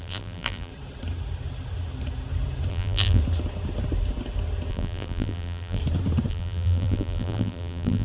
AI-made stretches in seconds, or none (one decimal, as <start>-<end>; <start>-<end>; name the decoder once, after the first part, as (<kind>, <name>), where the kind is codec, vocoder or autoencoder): 0.0-0.7 (vocoder, BigVGAN v2); 2.7-3.2; 4.7-5.8; 6.3-8.0